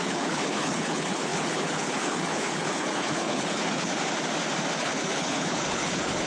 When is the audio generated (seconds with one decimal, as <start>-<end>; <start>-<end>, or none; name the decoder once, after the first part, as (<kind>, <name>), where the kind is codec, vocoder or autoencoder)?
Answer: 0.0-3.9 (codec, HILCodec); 4.8-6.3